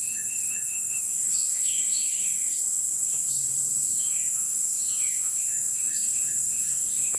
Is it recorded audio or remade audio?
remade